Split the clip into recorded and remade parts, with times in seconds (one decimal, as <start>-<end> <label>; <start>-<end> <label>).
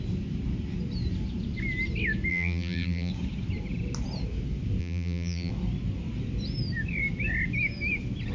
0.0-2.3 recorded; 2.3-3.1 remade; 3.1-4.8 recorded; 4.8-5.5 remade; 5.5-8.3 recorded